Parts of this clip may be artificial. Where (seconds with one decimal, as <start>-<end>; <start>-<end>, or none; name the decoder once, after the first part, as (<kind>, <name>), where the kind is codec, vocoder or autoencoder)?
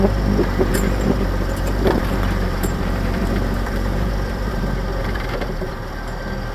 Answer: 0.7-4.6 (vocoder, BigVGAN v2); 5.0-5.7